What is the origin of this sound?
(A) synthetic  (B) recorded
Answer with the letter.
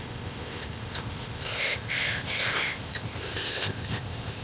A